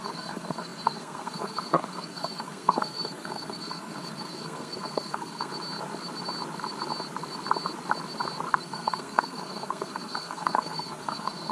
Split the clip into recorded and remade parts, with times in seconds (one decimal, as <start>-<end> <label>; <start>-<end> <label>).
0.0-5.5 remade; 5.5-8.6 recorded; 8.6-11.5 remade